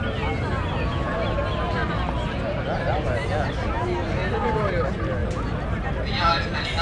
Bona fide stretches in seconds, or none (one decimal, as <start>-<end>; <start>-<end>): 0.0-6.8